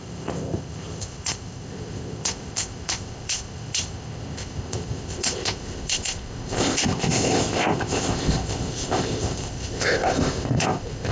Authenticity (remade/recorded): remade